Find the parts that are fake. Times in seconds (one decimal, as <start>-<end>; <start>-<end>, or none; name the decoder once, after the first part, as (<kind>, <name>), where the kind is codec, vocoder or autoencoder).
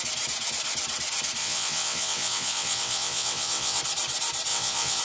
1.4-3.8 (vocoder, WaveNeXt); 4.5-5.0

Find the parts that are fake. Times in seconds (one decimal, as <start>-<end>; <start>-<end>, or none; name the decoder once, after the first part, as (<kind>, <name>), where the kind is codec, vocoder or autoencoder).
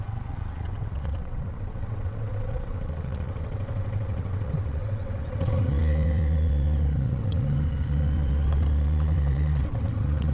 0.0-10.3 (vocoder, WaveNeXt)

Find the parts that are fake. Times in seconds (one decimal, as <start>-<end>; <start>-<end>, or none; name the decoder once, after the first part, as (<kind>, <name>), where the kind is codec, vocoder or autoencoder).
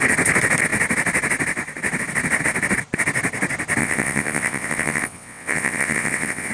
3.8-6.5 (vocoder, WaveNeXt)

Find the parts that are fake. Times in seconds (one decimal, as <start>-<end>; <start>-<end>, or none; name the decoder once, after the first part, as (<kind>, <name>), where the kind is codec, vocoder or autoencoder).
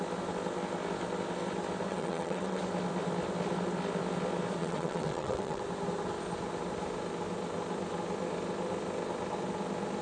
1.9-2.6 (vocoder, WaveNeXt); 4.6-5.6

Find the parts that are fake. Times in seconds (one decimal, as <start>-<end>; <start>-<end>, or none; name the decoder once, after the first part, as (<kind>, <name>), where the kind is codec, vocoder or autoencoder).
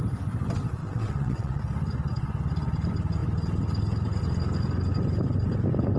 0.8-1.6 (vocoder, WaveNeXt)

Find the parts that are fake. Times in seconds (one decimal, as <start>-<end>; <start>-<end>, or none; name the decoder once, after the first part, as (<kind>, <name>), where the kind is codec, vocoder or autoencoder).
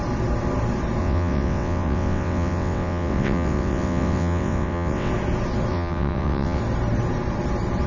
1.0-5.1 (vocoder, WaveNeXt); 5.7-6.6